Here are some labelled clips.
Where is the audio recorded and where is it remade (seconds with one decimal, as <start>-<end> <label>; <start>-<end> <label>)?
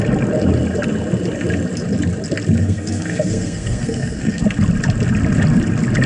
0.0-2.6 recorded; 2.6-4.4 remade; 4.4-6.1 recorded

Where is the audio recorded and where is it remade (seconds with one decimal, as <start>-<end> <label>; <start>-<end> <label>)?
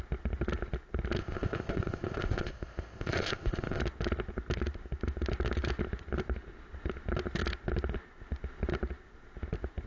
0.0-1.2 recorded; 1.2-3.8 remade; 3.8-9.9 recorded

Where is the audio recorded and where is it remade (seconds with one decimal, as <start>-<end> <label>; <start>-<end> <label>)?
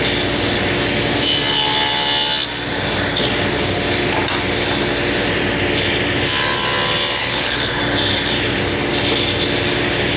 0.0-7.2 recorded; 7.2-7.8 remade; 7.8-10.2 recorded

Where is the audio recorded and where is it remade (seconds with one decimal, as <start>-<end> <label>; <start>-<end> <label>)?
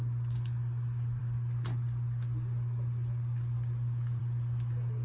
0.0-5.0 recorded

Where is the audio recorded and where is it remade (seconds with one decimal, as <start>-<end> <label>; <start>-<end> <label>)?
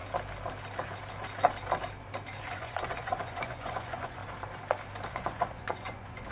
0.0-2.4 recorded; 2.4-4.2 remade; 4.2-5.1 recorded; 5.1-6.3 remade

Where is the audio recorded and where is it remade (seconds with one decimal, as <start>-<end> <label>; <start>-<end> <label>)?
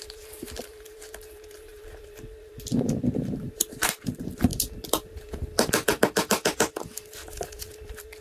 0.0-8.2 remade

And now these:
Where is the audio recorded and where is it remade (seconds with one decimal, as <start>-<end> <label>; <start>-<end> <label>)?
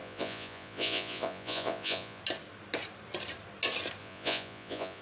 0.0-2.2 remade; 2.2-4.0 recorded; 4.0-5.0 remade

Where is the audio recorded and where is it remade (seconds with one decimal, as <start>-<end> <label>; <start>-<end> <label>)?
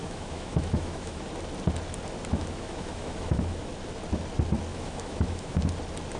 0.0-1.2 remade; 1.2-2.3 recorded; 2.3-3.7 remade; 3.7-4.7 recorded; 4.7-5.7 remade; 5.7-6.2 recorded